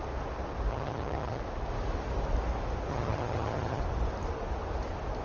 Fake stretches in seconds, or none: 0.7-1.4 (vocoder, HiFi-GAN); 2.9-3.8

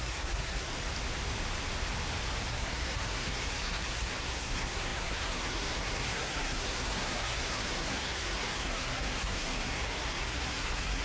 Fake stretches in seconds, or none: 0.0-0.7 (codec, SNAC); 2.5-11.0

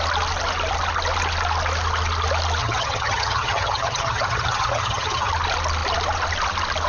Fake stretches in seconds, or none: 2.6-5.3 (vocoder, HiFi-GAN)

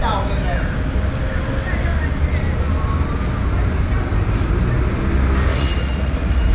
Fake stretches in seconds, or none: 5.5-6.5 (vocoder, Vocos)